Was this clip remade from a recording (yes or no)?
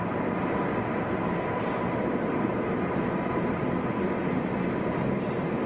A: no